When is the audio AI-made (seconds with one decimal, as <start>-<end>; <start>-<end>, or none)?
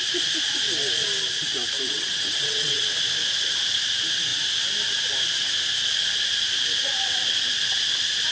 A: 1.9-2.8